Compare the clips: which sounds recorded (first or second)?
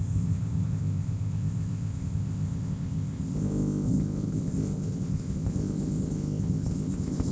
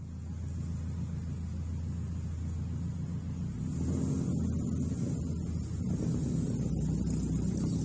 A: second